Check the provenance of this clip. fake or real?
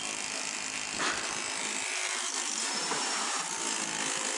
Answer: real